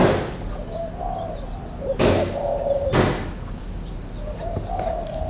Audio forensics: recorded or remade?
recorded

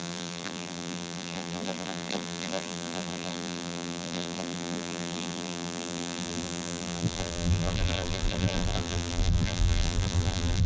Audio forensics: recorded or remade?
remade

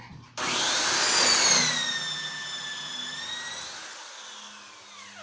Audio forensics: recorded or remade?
recorded